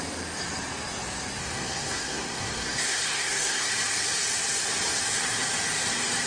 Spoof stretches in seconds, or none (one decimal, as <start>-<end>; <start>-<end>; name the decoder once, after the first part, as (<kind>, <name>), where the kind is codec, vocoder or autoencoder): 1.4-3.7 (codec, SNAC)